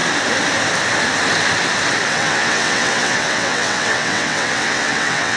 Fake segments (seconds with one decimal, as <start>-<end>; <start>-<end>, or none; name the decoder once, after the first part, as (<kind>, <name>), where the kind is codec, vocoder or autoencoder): 2.1-5.4 (vocoder, WaveNeXt)

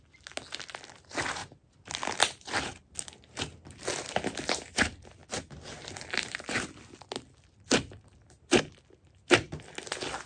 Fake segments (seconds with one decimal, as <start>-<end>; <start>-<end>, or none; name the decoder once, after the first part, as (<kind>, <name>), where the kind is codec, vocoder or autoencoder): none

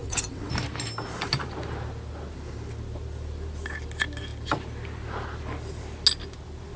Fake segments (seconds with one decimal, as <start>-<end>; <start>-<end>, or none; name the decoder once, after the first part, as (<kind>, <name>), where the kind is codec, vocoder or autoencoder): 0.0-0.5 (vocoder, WaveNeXt)

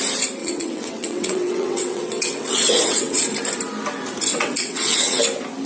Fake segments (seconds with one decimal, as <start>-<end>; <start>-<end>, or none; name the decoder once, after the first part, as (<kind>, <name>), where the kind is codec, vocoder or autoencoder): 0.4-3.2 (vocoder, WaveNeXt); 4.3-5.2

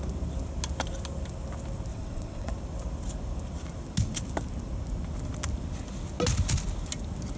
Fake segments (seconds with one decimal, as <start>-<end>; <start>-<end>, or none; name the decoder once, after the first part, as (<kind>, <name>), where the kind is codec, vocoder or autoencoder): 1.9-2.5 (vocoder, WaveNeXt)